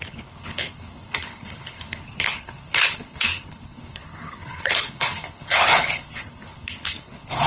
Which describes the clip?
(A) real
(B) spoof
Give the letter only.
B